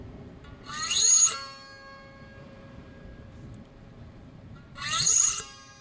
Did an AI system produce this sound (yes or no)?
yes